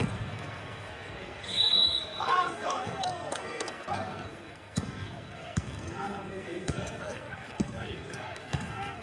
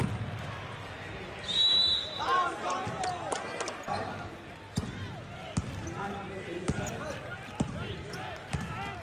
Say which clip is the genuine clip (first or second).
second